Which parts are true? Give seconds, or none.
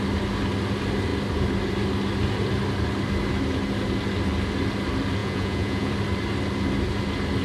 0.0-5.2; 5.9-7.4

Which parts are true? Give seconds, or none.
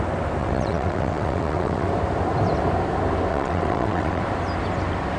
0.0-0.4; 1.9-3.3; 4.2-5.2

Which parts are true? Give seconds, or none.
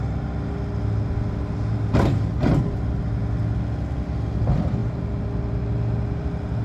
0.0-4.8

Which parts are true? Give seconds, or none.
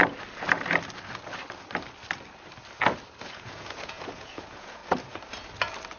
0.0-3.2; 4.8-6.0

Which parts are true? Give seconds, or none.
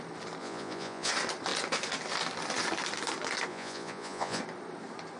0.0-0.4; 1.1-3.5; 4.4-5.2